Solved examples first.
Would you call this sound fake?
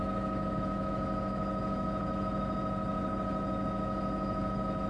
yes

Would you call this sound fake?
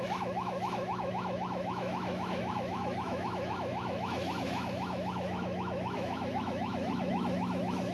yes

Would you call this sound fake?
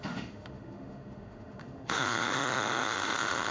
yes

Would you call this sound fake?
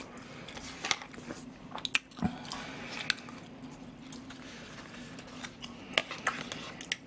no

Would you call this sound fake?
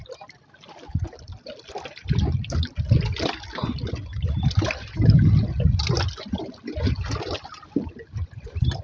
no